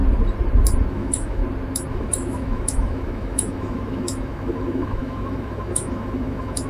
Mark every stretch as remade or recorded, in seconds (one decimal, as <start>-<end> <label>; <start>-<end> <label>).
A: 0.0-0.9 recorded; 0.9-1.4 remade; 1.4-1.9 recorded; 1.9-6.7 remade